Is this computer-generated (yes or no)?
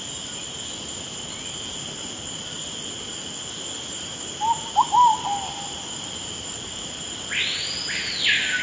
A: no